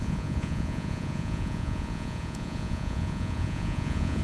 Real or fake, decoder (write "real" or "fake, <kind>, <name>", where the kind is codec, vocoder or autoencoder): fake, vocoder, Vocos